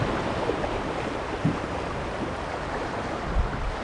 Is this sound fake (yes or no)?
no